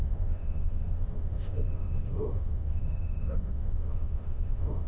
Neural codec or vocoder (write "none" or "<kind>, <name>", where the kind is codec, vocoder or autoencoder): autoencoder, DAC-VAE